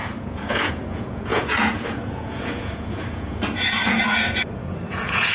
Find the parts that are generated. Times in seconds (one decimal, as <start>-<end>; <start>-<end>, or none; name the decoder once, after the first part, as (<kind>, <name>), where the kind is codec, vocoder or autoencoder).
0.0-5.3 (vocoder, Vocos)